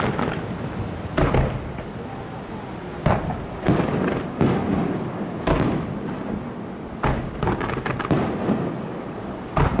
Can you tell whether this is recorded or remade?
recorded